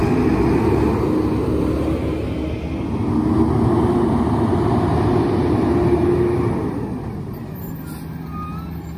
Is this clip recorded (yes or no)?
yes